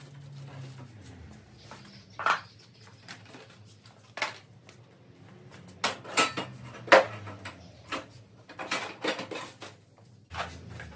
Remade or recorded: recorded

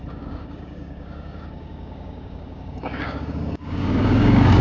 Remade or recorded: remade